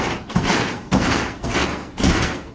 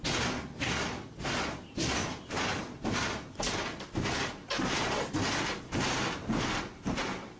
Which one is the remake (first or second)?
first